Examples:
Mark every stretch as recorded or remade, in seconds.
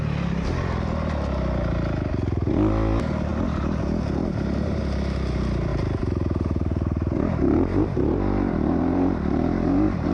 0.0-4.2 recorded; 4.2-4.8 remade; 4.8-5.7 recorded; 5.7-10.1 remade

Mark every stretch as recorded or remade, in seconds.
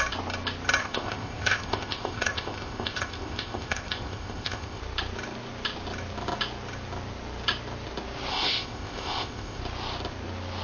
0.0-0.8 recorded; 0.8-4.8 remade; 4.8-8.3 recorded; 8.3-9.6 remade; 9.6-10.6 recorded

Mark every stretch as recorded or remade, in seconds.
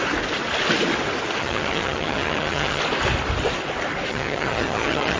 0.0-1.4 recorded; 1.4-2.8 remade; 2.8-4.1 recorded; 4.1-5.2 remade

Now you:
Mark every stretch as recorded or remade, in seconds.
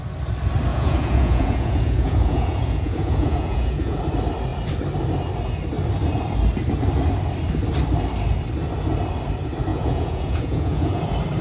0.0-0.7 recorded; 0.7-4.0 remade; 4.0-9.7 recorded; 9.7-11.0 remade; 11.0-11.4 recorded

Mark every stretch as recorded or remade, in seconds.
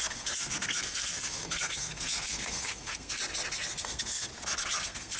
0.0-3.2 remade; 3.2-3.8 recorded; 3.8-4.3 remade; 4.3-4.8 recorded; 4.8-5.2 remade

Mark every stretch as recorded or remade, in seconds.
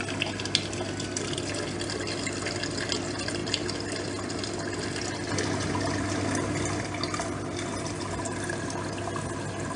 0.0-9.8 recorded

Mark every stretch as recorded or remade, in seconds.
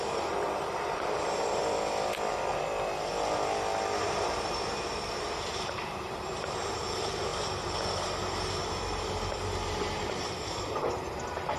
0.0-1.6 remade; 1.6-2.3 recorded; 2.3-2.7 remade; 2.7-4.0 recorded; 4.0-11.6 remade